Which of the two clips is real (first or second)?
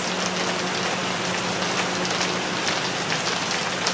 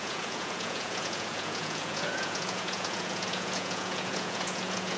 first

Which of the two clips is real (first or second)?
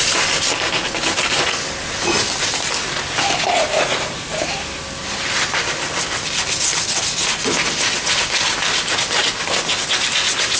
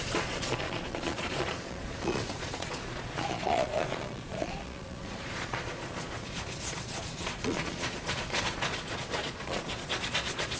first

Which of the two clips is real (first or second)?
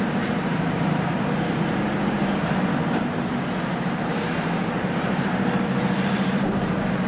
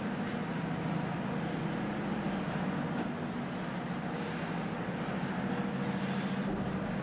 second